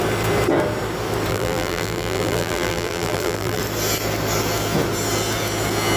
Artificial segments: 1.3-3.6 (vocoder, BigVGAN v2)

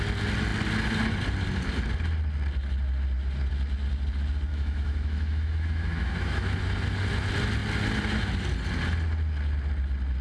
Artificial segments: 4.5-6.6 (autoencoder, DAC-VAE)

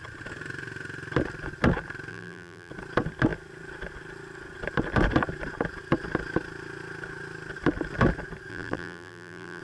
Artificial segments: 2.1-2.7 (vocoder, BigVGAN v2); 8.5-9.6